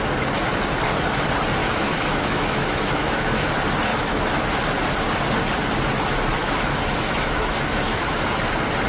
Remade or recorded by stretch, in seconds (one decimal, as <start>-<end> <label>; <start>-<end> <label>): 0.0-1.6 recorded; 1.6-3.5 remade; 3.5-3.9 recorded; 3.9-4.5 remade; 4.5-6.4 recorded; 6.4-8.2 remade; 8.2-8.9 recorded